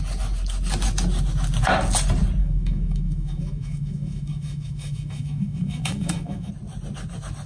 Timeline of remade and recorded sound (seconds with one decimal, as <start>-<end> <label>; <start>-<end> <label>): 0.0-2.4 recorded; 2.4-6.5 remade; 6.5-7.5 recorded